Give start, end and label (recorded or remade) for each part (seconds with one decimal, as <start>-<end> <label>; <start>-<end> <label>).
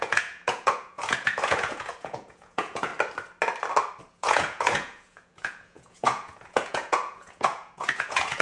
0.0-2.9 remade; 2.9-4.1 recorded; 4.1-8.4 remade